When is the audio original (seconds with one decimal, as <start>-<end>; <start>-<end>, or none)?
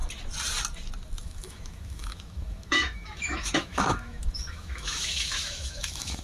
0.0-1.2